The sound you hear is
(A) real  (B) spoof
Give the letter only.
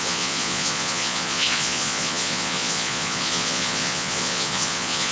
B